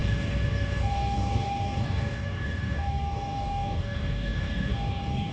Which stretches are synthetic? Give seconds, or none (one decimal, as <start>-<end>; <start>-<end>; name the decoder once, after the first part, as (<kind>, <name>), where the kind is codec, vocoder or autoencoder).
0.0-5.3 (codec, DAC)